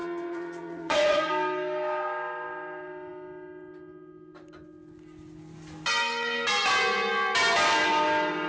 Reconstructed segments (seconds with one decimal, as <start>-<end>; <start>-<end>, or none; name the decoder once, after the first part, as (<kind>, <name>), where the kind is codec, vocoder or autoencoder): 0.0-1.3 (vocoder, Vocos)